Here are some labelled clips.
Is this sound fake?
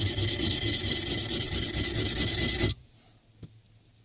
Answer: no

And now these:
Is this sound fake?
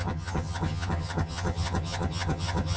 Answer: yes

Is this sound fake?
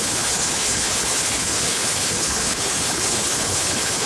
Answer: yes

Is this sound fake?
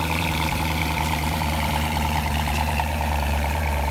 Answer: yes